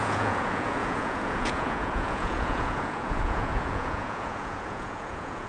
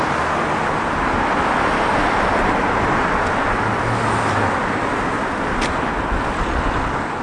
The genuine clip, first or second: second